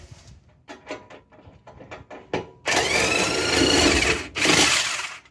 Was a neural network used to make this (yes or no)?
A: no